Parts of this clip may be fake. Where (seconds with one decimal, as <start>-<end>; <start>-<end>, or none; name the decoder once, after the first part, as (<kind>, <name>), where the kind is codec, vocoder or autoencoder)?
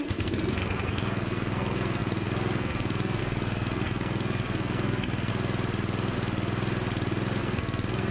0.0-5.3 (codec, SNAC); 7.4-8.1